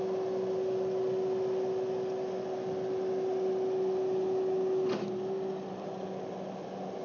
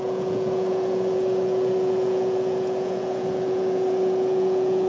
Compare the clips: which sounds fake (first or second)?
second